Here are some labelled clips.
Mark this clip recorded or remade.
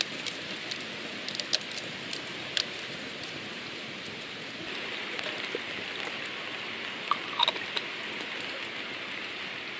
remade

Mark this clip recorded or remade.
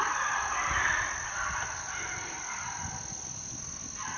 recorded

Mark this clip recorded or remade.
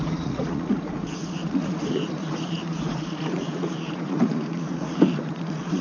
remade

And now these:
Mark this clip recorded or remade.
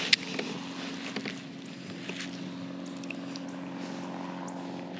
recorded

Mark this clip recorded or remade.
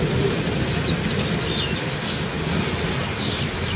recorded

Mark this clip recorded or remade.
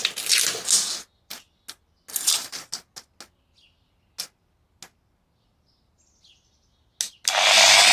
recorded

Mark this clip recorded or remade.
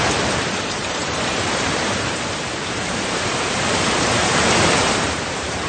remade